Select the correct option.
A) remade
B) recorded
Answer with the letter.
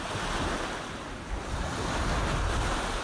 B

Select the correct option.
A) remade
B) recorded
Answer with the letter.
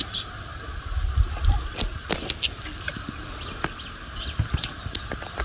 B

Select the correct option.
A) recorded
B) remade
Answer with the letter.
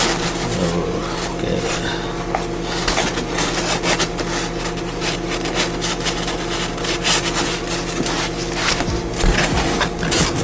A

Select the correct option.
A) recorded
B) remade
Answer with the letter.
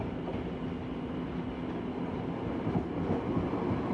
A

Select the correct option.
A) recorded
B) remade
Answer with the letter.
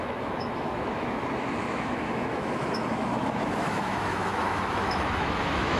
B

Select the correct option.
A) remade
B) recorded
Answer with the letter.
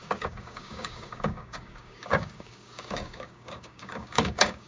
A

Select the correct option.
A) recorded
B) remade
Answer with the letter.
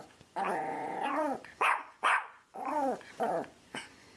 B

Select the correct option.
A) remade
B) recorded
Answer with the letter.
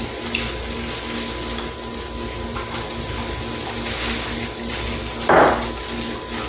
B